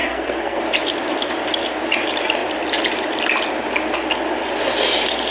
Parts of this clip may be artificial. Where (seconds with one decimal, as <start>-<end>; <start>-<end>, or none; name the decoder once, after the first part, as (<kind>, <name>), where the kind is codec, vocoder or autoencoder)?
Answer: 0.0-0.6 (codec, SNAC)